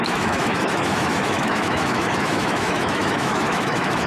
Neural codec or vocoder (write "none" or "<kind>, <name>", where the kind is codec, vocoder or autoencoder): autoencoder, DAC-VAE